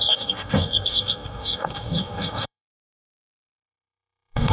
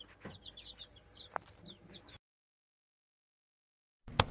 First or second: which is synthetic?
first